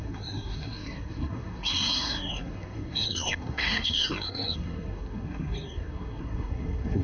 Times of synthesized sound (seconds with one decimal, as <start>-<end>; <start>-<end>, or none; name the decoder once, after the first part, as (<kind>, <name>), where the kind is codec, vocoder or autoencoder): 0.0-7.0 (codec, SNAC)